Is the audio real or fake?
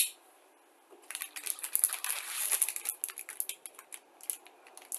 real